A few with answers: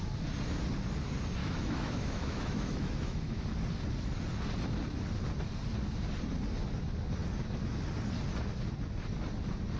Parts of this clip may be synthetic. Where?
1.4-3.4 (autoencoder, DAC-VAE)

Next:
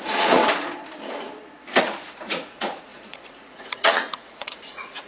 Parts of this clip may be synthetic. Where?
0.0-0.4 (vocoder, Vocos); 1.8-5.1

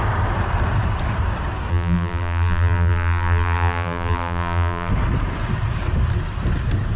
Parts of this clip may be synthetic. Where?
1.7-4.9 (vocoder, BigVGAN v2)